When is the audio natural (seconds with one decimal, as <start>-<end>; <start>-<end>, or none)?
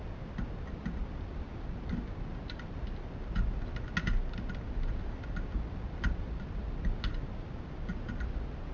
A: 0.0-8.7